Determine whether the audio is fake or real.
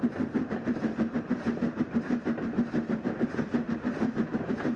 real